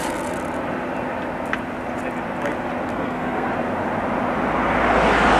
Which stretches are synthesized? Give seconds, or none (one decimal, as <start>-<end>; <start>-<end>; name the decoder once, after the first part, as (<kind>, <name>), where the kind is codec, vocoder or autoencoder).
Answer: 2.9-3.5 (codec, SNAC)